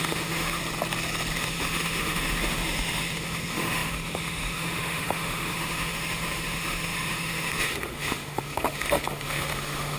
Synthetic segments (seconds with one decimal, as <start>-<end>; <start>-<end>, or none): 0.0-0.6; 1.3-10.0